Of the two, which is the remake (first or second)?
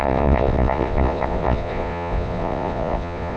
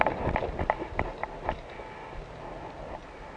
first